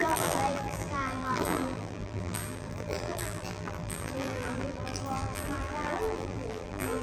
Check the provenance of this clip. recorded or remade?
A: remade